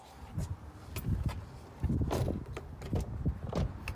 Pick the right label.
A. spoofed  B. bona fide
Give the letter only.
B